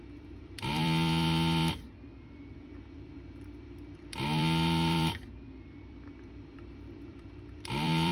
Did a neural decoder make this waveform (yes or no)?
yes